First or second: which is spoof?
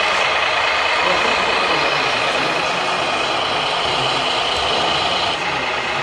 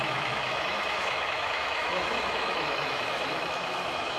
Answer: second